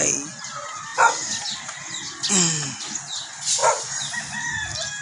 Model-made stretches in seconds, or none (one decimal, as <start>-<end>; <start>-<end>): none